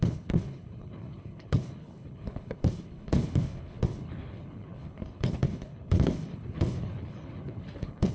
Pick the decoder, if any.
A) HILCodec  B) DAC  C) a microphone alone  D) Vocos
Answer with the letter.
A